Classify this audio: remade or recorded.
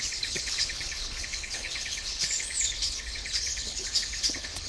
remade